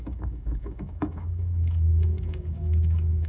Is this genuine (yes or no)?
no